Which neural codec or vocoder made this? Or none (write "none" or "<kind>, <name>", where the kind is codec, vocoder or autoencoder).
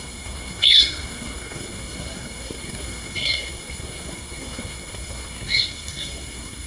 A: codec, SNAC